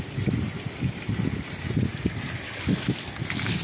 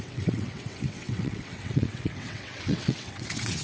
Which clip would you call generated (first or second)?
second